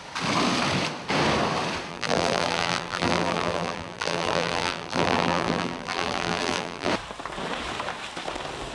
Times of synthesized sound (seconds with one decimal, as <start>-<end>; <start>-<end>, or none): 1.9-6.9